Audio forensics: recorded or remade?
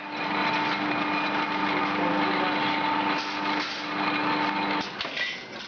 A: recorded